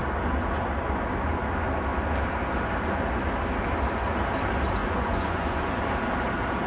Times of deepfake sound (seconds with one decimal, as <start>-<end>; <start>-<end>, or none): 4.8-5.8